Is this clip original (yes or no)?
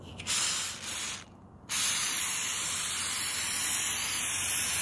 yes